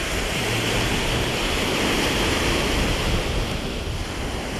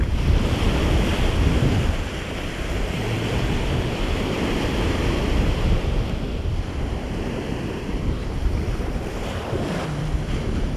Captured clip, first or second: first